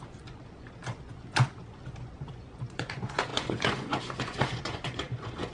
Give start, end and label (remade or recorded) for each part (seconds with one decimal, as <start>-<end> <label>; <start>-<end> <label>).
0.0-5.5 remade